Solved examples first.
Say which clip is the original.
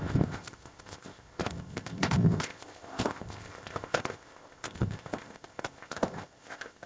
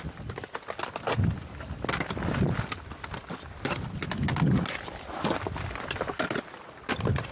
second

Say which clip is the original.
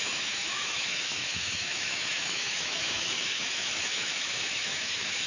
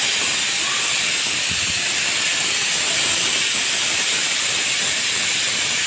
second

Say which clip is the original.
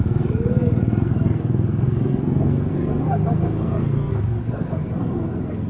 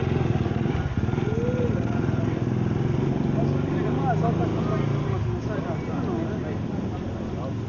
second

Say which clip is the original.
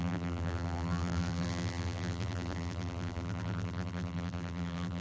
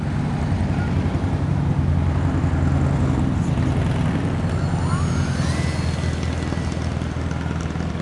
second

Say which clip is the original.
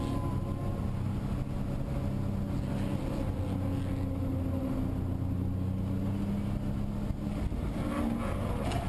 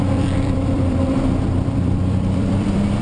first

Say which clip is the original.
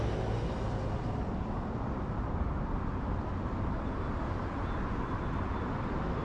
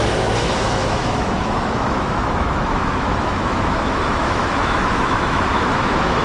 first